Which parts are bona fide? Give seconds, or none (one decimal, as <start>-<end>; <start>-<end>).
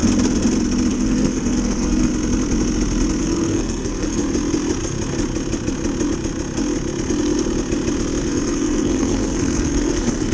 0.0-0.9; 2.1-3.2; 4.2-8.2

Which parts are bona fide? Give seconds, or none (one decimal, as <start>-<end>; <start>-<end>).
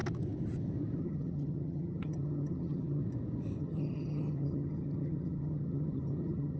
0.0-1.0; 3.0-3.6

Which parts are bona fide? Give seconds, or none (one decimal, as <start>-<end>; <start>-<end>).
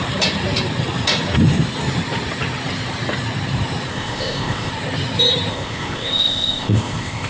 0.0-3.9; 4.7-5.5